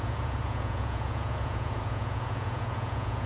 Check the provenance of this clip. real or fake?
fake